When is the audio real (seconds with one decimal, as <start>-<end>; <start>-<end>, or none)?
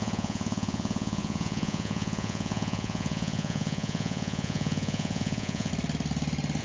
5.7-6.6